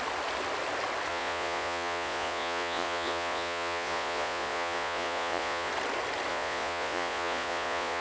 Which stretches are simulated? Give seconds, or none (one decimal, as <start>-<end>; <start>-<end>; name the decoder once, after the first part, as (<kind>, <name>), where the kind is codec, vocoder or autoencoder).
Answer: 1.1-5.7 (vocoder, Vocos); 6.3-8.0